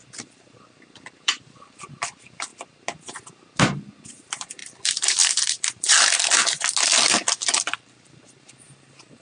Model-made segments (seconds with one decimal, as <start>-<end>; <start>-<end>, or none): 0.0-2.5; 4.1-6.4; 7.5-9.2